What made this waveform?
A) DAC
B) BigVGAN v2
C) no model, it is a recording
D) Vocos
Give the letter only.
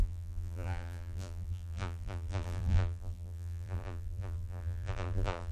B